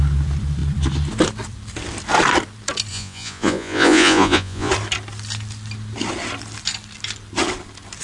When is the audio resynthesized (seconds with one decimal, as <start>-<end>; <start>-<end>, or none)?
2.9-4.7